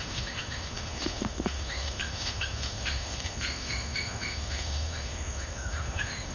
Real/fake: fake